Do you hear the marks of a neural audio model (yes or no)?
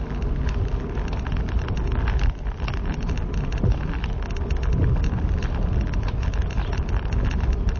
no